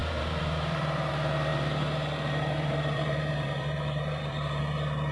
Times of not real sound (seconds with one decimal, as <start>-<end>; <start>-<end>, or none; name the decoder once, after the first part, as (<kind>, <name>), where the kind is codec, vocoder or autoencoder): 0.0-1.1 (vocoder, BigVGAN v2); 1.5-4.6